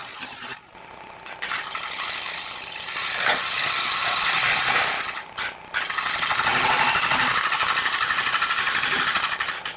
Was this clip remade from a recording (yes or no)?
no